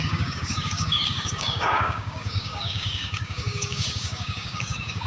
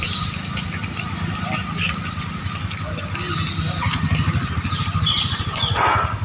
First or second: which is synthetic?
first